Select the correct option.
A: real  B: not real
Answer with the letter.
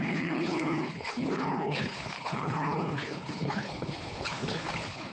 B